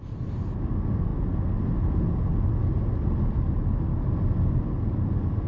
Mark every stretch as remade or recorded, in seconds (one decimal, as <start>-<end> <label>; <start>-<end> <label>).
0.0-5.5 recorded